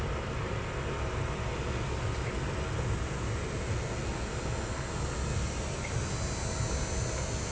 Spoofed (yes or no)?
no